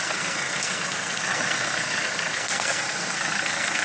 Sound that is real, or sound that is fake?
fake